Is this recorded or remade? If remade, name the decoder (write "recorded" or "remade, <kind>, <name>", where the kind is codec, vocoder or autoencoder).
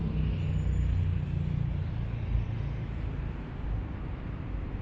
recorded